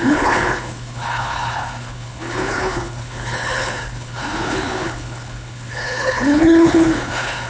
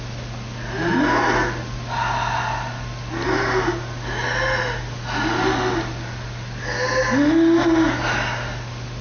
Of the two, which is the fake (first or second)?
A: first